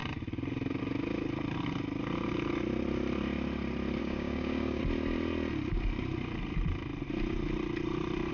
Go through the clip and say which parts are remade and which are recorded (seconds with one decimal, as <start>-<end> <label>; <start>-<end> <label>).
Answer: 0.0-4.0 recorded; 4.0-4.8 remade; 4.8-8.3 recorded